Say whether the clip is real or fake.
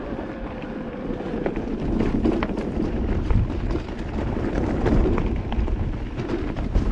fake